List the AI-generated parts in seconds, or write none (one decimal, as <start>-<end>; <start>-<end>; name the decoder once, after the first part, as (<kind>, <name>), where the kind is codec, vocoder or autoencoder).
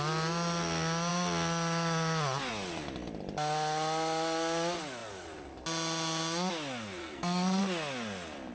7.0-7.6 (codec, SNAC)